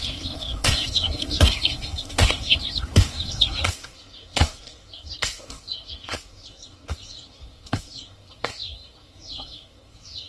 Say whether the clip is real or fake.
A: fake